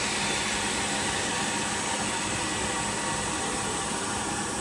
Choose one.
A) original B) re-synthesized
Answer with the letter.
A